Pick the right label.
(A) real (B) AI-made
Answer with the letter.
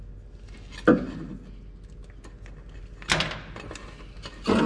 A